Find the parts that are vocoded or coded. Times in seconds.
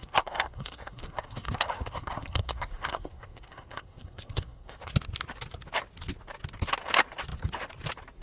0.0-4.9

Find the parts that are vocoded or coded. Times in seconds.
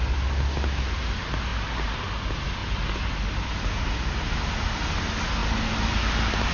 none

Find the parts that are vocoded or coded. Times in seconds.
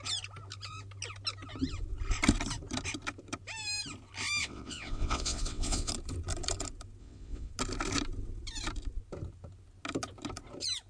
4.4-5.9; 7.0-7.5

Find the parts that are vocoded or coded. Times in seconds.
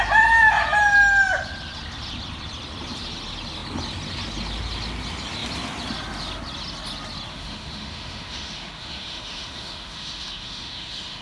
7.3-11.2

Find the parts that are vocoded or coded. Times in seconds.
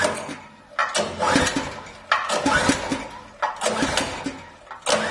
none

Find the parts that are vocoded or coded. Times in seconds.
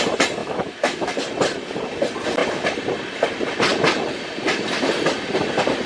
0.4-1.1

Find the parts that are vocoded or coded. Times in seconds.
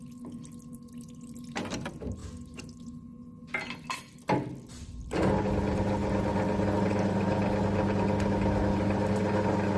none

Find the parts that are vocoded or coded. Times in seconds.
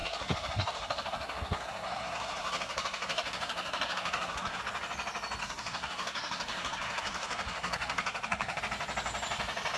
0.0-4.6; 5.4-8.6